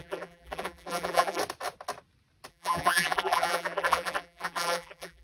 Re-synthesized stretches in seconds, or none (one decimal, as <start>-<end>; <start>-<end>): 0.0-1.4; 2.5-5.2